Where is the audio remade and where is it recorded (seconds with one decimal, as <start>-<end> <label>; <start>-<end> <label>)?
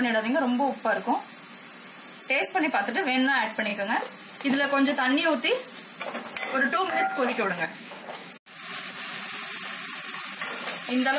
0.0-6.5 recorded; 6.5-8.3 remade; 8.3-11.2 recorded